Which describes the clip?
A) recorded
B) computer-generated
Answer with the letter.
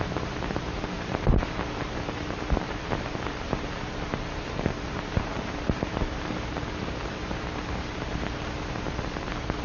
B